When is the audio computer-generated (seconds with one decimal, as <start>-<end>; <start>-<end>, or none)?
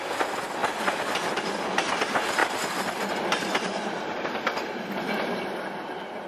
2.4-3.9